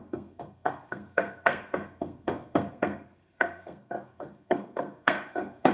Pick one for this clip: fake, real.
fake